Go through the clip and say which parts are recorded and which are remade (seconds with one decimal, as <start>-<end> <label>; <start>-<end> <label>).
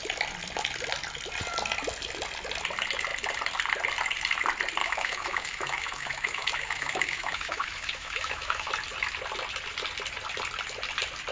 0.0-4.8 recorded; 4.8-8.7 remade; 8.7-11.3 recorded